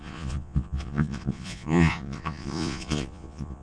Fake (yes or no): yes